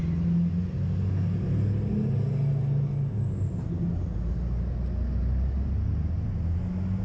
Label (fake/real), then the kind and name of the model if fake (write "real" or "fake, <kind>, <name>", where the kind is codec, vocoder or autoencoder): real